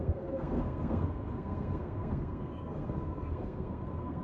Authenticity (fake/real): fake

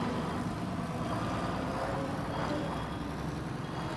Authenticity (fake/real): real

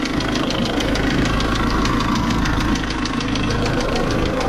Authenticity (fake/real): fake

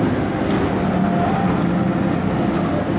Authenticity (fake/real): real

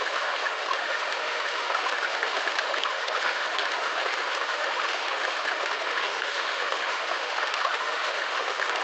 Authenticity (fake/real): fake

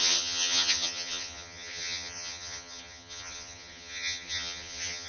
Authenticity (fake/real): fake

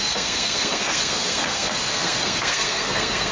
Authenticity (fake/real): fake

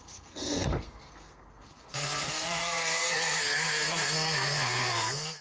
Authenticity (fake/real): fake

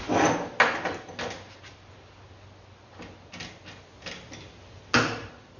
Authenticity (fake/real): real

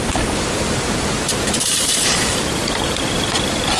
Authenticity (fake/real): fake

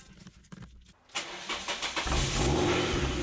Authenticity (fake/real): real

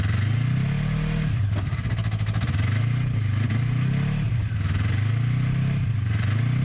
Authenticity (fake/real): real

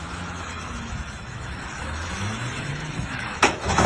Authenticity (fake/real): fake